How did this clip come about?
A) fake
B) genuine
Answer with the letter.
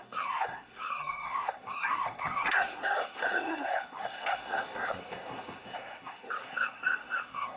A